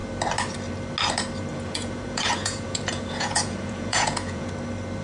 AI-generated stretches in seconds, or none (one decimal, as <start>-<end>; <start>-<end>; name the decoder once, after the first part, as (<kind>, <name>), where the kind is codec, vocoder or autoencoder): 1.5-4.5 (vocoder, Vocos)